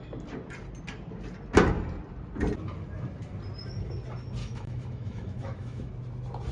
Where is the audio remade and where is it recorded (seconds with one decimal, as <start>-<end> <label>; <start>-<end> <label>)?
0.0-4.4 recorded; 4.4-5.9 remade; 5.9-6.5 recorded